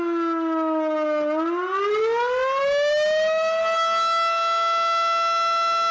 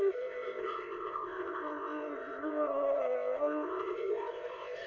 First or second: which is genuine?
first